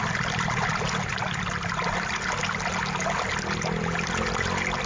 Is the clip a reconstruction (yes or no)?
no